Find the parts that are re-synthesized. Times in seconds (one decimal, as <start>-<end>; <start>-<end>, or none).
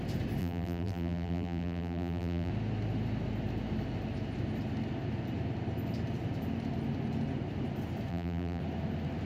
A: 0.4-2.5; 8.1-8.6